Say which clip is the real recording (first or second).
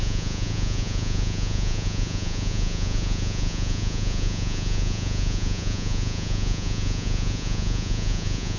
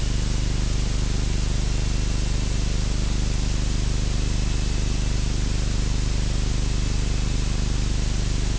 second